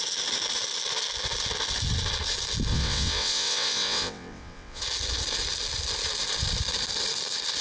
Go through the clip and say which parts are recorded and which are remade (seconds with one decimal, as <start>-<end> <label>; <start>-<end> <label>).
0.0-2.7 recorded; 2.7-4.8 remade; 4.8-7.6 recorded